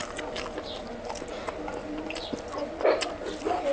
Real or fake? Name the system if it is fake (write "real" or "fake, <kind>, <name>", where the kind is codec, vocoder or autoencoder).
real